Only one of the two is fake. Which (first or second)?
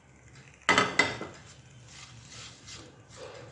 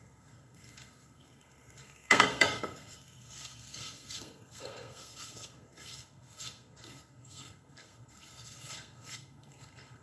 second